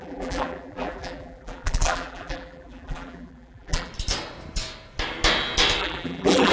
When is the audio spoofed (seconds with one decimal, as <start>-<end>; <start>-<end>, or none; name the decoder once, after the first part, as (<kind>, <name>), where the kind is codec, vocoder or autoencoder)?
0.0-3.9 (vocoder, BigVGAN v2); 5.8-6.5